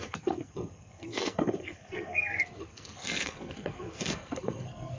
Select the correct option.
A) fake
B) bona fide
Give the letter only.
A